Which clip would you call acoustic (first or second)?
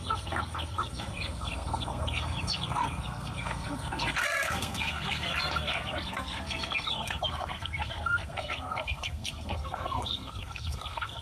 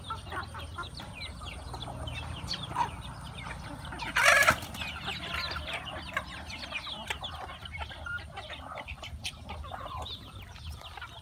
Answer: second